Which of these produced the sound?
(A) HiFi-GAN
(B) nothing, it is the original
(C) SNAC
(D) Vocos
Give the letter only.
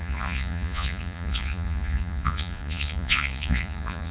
D